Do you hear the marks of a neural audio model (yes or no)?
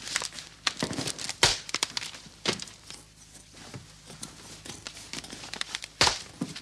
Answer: yes